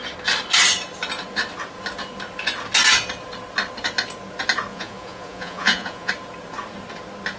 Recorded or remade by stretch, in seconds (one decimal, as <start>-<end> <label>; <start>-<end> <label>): 0.0-4.7 recorded; 4.7-6.1 remade; 6.1-7.4 recorded